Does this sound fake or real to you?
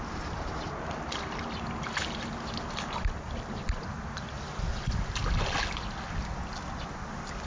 real